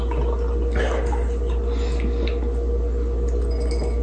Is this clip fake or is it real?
real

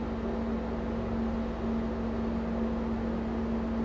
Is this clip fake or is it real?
real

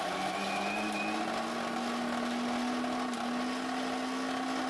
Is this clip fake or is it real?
real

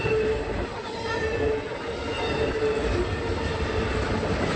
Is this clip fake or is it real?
real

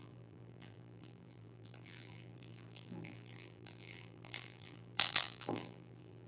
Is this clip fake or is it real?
fake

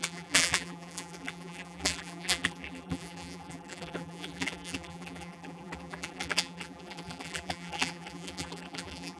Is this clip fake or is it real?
fake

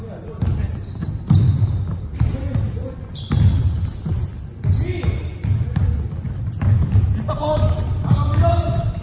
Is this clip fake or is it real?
real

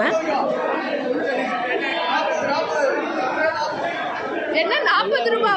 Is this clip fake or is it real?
fake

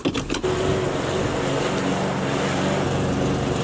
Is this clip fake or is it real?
real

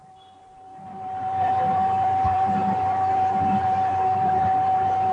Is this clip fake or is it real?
fake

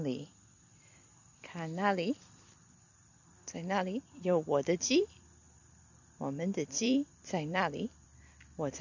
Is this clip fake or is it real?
fake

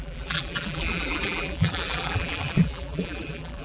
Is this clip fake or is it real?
fake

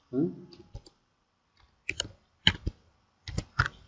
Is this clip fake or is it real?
real